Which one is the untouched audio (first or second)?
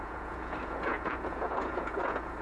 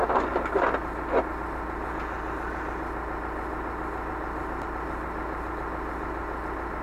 second